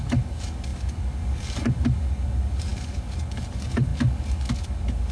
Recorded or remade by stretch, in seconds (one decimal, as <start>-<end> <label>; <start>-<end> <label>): 0.0-5.1 remade